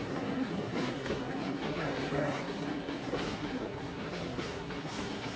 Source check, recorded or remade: remade